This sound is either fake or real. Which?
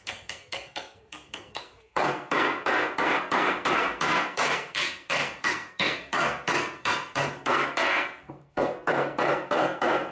fake